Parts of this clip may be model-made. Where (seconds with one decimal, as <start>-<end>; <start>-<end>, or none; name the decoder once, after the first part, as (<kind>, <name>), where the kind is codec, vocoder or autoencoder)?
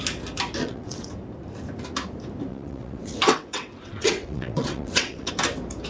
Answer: 0.6-1.1 (vocoder, WaveNeXt); 2.5-5.3